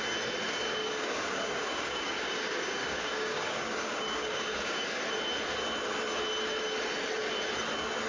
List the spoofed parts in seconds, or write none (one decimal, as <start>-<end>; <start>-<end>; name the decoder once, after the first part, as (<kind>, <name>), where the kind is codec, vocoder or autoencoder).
0.6-5.0 (codec, DAC)